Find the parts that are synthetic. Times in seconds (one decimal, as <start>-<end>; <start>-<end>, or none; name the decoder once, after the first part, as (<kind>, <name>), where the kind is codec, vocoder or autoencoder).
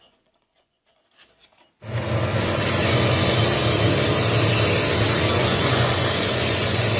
0.0-1.0 (vocoder, Vocos); 2.7-3.4; 5.3-7.0